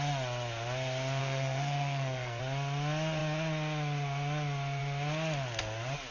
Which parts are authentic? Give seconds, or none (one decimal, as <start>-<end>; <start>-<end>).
0.0-1.2; 2.4-6.1